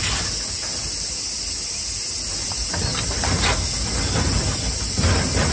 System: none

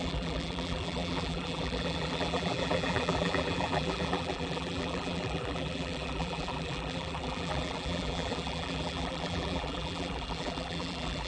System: vocoder, BigVGAN v2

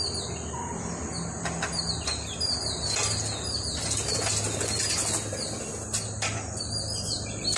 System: none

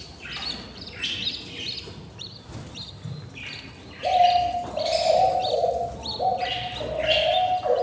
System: none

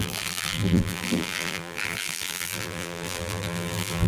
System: vocoder, BigVGAN v2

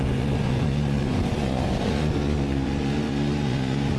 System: vocoder, Vocos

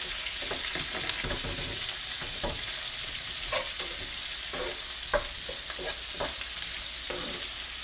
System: none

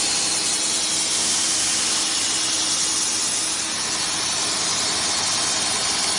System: none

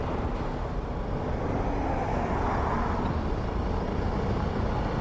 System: none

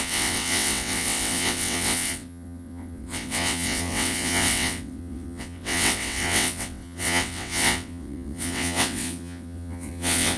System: vocoder, WaveNeXt